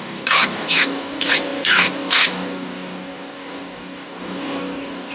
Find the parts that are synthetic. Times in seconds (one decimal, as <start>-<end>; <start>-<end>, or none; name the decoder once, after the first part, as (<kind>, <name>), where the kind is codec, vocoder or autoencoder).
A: 0.0-5.1 (codec, DAC)